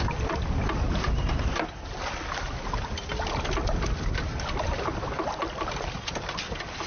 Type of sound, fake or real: real